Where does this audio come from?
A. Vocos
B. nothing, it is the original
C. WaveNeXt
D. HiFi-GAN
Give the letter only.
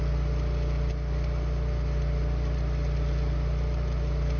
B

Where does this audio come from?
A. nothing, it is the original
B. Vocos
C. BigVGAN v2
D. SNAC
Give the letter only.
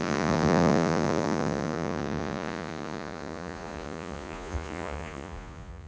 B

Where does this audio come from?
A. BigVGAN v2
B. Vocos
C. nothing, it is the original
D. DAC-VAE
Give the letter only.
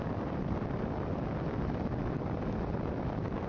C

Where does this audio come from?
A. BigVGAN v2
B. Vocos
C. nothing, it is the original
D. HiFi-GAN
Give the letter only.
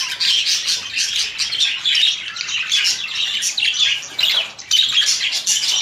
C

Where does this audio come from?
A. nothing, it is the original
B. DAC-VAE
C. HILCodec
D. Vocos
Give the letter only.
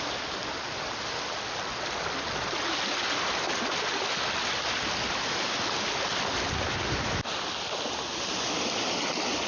A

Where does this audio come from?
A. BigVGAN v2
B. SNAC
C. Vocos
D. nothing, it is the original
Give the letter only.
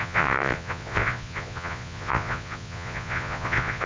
C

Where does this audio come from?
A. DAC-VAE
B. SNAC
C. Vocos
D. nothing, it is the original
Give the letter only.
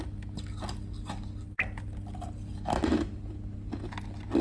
D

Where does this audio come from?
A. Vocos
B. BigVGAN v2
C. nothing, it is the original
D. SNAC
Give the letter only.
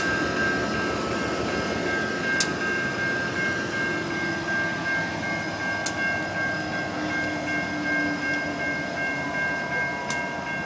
C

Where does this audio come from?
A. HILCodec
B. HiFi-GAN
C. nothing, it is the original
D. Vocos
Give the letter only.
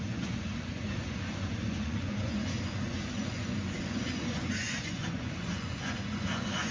D